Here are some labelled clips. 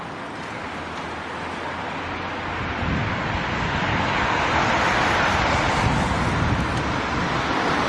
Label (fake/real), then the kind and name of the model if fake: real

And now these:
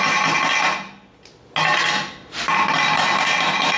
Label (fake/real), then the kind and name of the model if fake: real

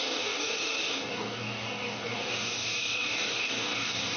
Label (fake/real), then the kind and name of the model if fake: fake, codec, DAC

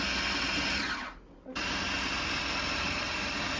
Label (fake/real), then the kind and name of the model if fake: real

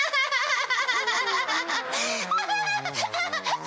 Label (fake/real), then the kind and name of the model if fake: real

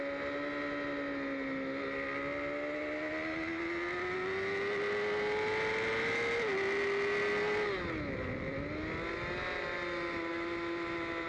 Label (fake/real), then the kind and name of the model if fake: real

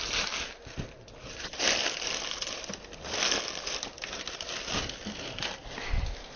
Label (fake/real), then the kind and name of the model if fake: real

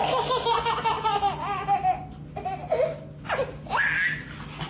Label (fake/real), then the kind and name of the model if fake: real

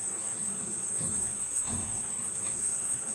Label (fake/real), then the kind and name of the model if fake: fake, codec, SNAC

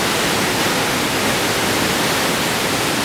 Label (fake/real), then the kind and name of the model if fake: real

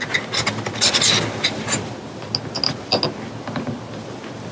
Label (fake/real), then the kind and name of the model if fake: real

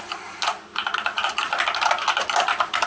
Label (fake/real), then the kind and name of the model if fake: real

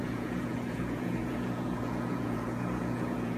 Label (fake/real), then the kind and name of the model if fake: fake, vocoder, Vocos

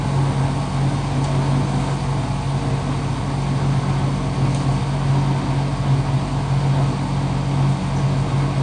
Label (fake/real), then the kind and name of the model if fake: real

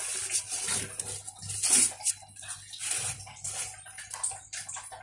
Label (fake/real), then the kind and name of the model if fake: real